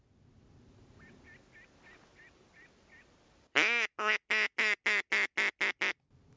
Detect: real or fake real